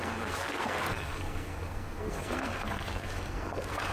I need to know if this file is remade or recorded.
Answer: remade